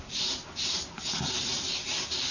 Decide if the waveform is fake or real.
real